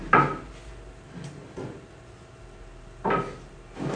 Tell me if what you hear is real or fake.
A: real